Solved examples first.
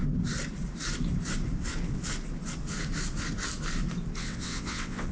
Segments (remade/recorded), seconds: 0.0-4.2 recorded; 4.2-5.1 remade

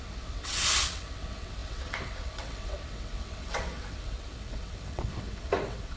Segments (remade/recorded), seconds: 0.0-6.0 remade

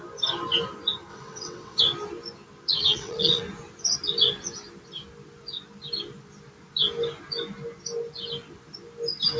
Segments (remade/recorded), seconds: 0.0-1.1 recorded; 1.1-1.8 remade; 1.8-2.8 recorded; 2.8-3.4 remade; 3.4-9.4 recorded

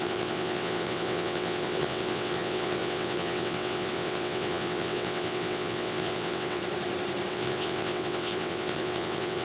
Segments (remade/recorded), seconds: 0.0-6.6 remade; 6.6-7.3 recorded; 7.3-9.4 remade

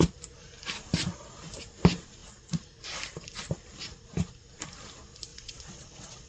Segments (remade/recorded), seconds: 0.0-5.3 recorded; 5.3-6.3 remade

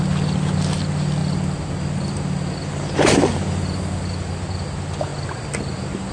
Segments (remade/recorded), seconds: 0.0-6.1 recorded

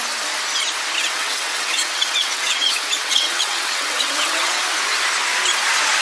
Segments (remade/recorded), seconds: 0.0-1.0 recorded; 1.0-4.6 remade; 4.6-6.0 recorded

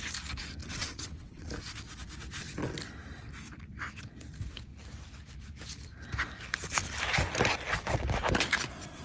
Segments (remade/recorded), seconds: 0.0-0.6 recorded; 0.6-1.5 remade; 1.5-9.0 recorded